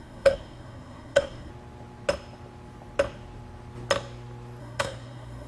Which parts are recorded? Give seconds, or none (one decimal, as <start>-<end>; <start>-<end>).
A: 1.5-4.6